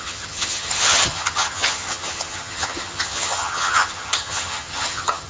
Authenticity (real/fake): fake